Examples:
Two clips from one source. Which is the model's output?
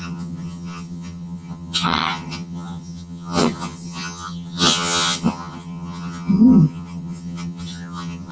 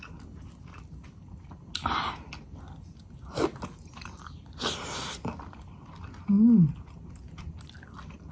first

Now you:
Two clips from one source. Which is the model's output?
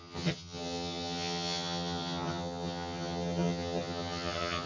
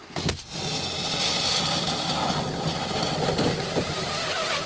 first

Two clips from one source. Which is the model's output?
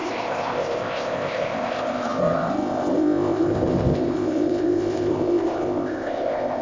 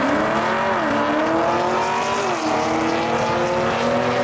first